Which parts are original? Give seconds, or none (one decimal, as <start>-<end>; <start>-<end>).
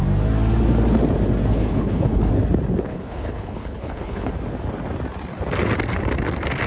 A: 0.0-1.5; 2.3-2.9; 4.3-6.7